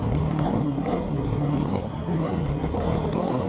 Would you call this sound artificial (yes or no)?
yes